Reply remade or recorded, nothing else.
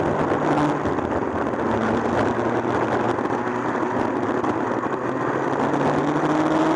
recorded